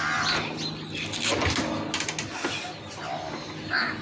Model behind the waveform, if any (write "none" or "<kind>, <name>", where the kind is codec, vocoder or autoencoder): none